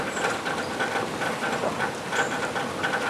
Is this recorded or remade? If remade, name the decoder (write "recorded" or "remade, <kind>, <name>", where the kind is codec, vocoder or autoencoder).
recorded